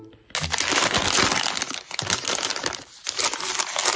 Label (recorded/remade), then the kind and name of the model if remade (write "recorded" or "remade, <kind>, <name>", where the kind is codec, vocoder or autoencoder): recorded